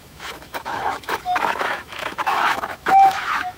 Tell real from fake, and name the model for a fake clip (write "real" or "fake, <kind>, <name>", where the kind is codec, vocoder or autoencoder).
fake, autoencoder, DAC-VAE